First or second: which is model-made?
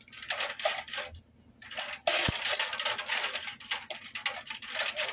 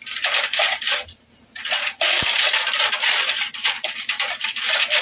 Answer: second